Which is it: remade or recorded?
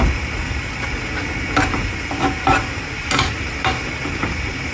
recorded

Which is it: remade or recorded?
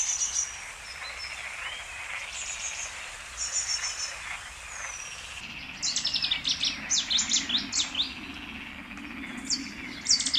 recorded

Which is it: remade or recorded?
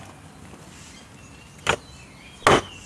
recorded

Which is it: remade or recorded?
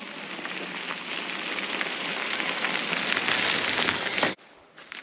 recorded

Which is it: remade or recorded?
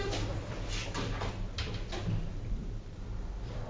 remade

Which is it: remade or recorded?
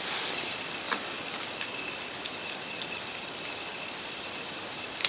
remade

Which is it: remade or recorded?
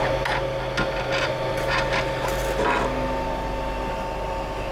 recorded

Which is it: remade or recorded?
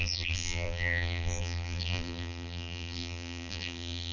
remade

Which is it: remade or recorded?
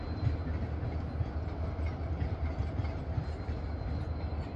recorded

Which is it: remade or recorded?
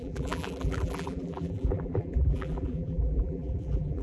remade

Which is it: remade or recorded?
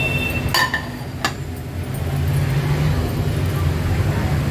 recorded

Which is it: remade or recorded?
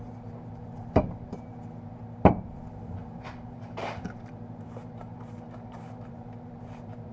remade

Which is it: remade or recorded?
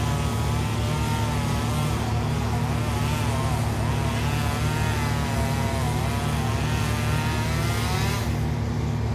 recorded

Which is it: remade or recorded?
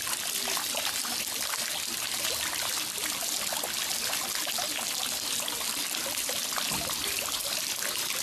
recorded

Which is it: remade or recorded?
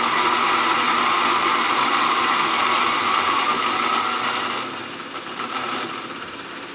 recorded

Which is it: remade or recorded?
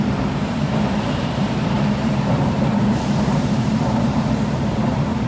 remade